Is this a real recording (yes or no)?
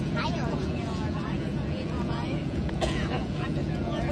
no